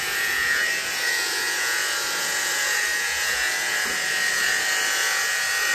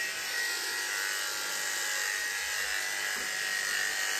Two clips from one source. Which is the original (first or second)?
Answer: second